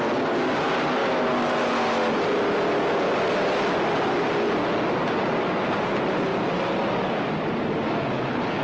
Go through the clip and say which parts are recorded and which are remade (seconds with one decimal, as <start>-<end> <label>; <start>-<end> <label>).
0.0-5.0 recorded; 5.0-5.8 remade; 5.8-6.3 recorded; 6.3-7.6 remade; 7.6-8.6 recorded